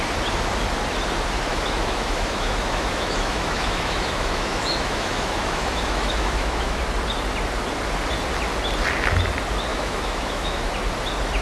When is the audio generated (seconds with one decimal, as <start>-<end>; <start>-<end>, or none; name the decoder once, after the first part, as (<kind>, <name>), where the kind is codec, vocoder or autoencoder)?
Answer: 1.5-6.8 (autoencoder, DAC-VAE); 9.7-10.7